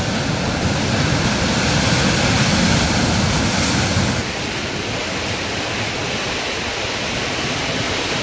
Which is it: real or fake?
real